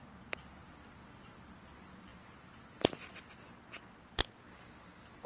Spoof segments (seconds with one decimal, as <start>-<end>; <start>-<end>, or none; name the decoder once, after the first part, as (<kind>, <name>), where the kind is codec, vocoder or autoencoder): none